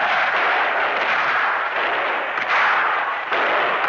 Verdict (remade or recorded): recorded